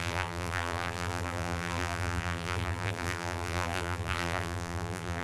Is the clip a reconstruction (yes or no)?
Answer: yes